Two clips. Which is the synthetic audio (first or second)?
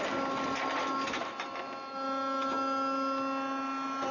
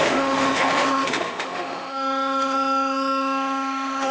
second